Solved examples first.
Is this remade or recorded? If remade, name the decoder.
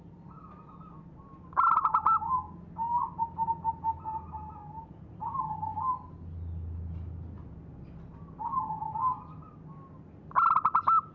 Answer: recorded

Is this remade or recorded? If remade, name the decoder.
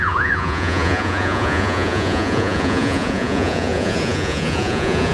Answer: remade, vocoder, Vocos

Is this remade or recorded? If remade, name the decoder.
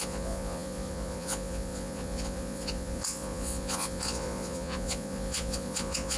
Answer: remade, vocoder, Vocos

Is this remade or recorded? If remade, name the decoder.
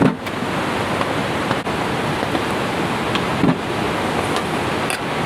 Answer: recorded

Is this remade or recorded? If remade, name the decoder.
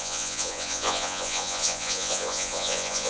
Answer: remade, vocoder, Vocos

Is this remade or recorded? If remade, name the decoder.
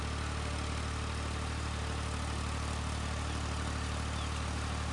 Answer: recorded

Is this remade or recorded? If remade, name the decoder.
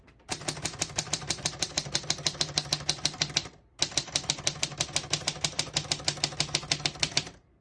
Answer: recorded